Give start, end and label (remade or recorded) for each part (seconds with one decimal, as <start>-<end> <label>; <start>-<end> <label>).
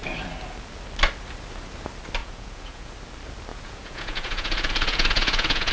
0.0-2.2 recorded; 2.2-2.9 remade; 2.9-3.5 recorded; 3.5-5.7 remade